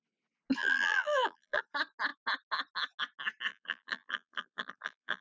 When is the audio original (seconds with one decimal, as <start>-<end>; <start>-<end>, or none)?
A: 0.0-0.6; 1.6-3.5